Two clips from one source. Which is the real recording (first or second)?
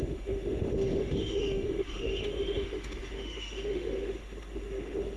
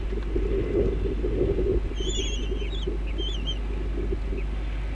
second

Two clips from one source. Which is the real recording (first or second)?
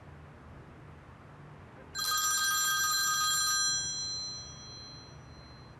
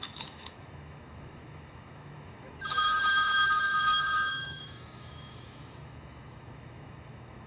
first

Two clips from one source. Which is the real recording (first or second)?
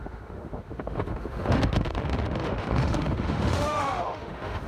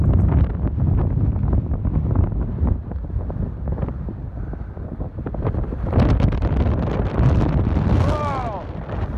second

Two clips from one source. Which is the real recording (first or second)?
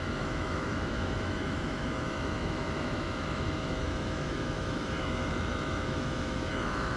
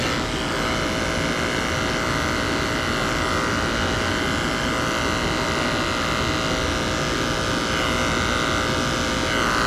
second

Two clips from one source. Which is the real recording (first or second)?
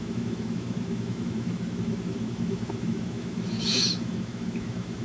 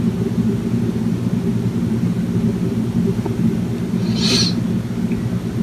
second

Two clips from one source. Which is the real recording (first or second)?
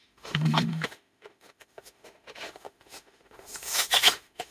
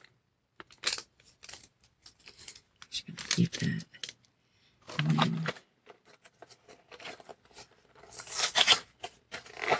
second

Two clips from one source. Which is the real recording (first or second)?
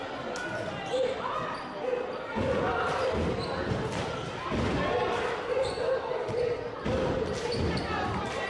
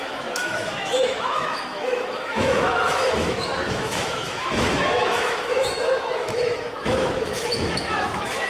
first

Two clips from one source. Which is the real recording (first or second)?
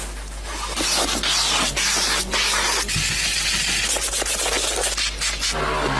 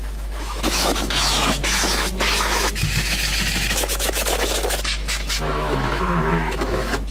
first